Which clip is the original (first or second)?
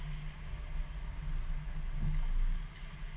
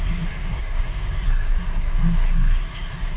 first